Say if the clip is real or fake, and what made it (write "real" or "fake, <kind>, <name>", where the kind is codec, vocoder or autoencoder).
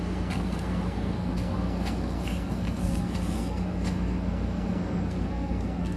fake, codec, SNAC